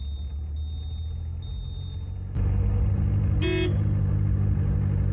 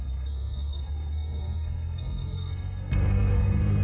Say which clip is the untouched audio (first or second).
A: first